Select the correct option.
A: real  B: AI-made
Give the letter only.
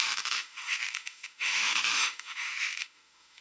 B